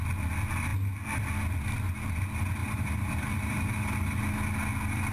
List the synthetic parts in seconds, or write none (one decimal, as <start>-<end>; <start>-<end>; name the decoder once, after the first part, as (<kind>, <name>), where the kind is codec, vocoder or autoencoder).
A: 2.6-4.2 (vocoder, BigVGAN v2)